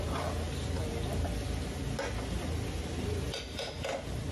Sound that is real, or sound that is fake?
real